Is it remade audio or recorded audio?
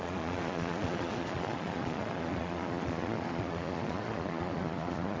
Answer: remade